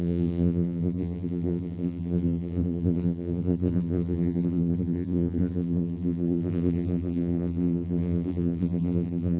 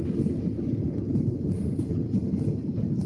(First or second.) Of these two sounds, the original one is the second